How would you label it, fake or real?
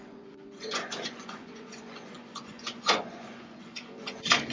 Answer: fake